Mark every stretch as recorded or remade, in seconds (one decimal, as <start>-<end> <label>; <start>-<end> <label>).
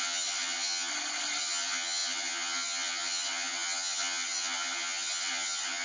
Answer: 0.0-0.9 remade; 0.9-1.4 recorded; 1.4-5.8 remade